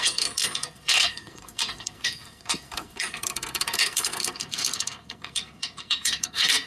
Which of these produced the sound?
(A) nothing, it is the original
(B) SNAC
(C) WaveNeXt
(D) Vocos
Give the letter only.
B